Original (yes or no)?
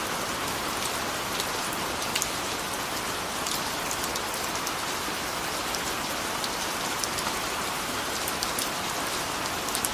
yes